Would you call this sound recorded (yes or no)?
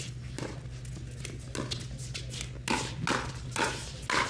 yes